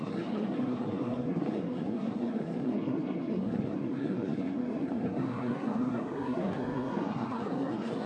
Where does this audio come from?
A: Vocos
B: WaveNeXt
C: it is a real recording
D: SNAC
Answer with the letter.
D